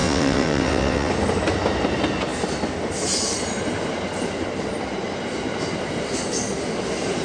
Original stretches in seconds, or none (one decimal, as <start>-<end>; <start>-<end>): 1.1-7.2